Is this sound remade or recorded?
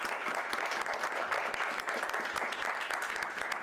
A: recorded